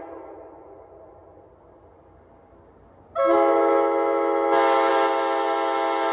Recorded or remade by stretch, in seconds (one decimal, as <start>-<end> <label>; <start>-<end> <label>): 0.0-6.1 recorded